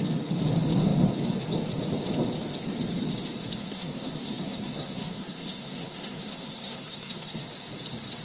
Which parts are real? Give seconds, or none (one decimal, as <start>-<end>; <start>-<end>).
0.0-3.6; 7.4-8.2